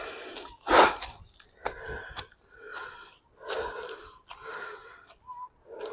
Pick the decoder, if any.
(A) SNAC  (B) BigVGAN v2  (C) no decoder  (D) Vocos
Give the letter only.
C